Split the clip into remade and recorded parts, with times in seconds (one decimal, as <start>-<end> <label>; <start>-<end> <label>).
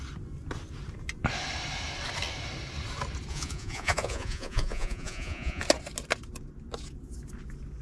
0.0-3.3 recorded; 3.3-5.6 remade; 5.6-7.8 recorded